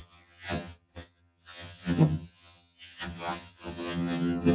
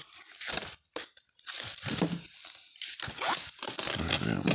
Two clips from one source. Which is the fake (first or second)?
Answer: first